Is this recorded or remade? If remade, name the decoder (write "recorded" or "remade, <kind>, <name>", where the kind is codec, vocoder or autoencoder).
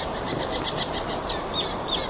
recorded